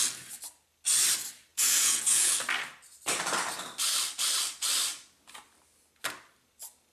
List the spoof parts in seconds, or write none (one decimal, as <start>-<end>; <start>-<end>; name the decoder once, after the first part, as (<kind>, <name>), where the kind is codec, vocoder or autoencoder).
1.5-2.3 (vocoder, Vocos)